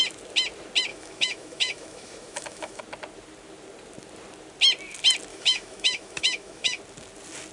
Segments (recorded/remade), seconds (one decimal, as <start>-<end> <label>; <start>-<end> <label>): 0.0-0.9 recorded; 0.9-2.8 remade; 2.8-5.3 recorded; 5.3-6.8 remade; 6.8-7.5 recorded